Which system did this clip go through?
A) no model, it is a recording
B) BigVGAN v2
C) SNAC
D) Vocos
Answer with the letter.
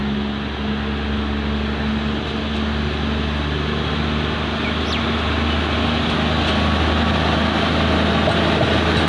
A